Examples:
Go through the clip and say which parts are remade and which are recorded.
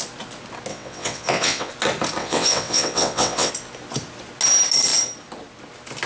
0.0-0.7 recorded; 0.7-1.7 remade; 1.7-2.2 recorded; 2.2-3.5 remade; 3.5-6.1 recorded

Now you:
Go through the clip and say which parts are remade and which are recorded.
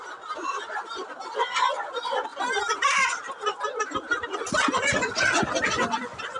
0.0-6.4 recorded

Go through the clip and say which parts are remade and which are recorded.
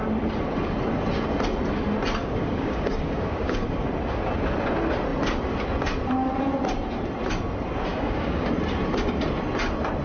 0.0-2.2 recorded; 2.2-3.9 remade; 3.9-7.9 recorded; 7.9-8.5 remade; 8.5-10.0 recorded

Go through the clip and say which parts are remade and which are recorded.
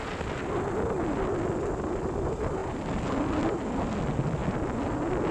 0.0-5.3 recorded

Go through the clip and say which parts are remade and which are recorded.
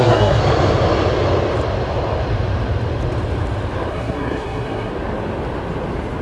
0.0-0.4 remade; 0.4-3.9 recorded; 3.9-4.9 remade; 4.9-6.2 recorded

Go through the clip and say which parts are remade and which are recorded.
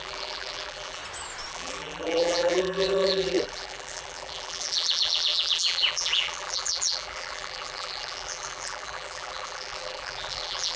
0.0-1.0 remade; 1.0-1.5 recorded; 1.5-10.8 remade